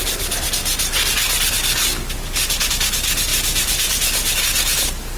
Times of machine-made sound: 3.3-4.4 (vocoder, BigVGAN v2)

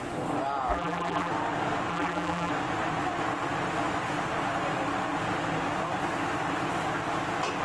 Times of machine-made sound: 0.7-1.3 (vocoder, BigVGAN v2); 1.9-2.5

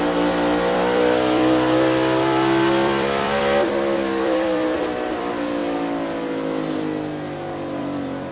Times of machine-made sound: 0.0-5.6 (vocoder, BigVGAN v2); 7.8-8.3

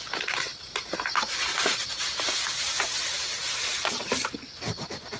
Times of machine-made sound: none